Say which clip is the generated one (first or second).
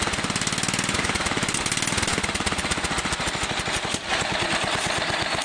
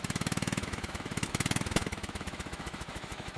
second